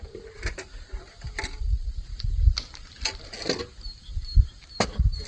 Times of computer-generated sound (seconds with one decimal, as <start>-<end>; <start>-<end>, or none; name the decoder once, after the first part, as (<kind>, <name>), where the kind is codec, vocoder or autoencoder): none